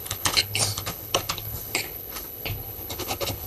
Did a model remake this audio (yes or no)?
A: yes